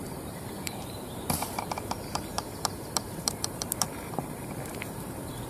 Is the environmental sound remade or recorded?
remade